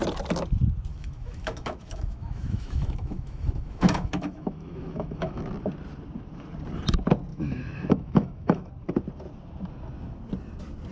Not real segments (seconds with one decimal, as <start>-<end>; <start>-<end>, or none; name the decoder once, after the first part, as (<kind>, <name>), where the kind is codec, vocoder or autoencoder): 0.9-5.4 (autoencoder, DAC-VAE); 7.3-8.7